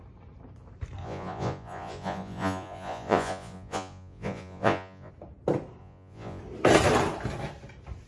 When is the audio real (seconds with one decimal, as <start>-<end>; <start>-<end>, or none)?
0.0-1.0; 5.1-5.8; 6.4-8.1